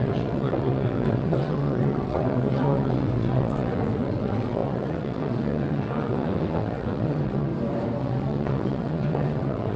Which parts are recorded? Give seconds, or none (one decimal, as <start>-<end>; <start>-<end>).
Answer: 7.5-8.0